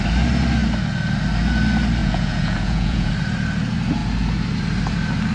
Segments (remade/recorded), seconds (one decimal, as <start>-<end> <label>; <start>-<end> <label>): 0.0-2.0 recorded; 2.0-3.1 remade; 3.1-5.3 recorded